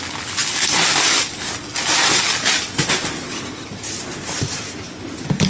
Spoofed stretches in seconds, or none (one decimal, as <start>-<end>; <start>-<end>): none